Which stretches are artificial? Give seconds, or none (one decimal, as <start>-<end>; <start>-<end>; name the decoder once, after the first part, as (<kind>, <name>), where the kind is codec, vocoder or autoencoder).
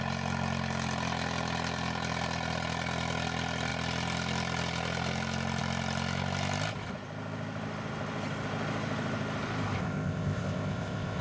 9.8-11.2 (codec, ZipCodec)